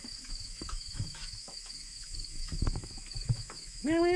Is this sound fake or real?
fake